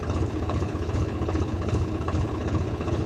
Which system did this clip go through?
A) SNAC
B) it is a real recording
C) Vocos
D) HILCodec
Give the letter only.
D